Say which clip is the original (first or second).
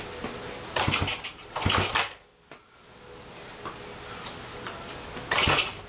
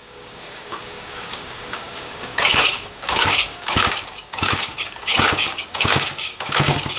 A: first